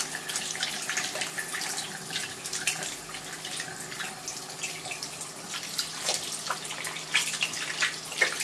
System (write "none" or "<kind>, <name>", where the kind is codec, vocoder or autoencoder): none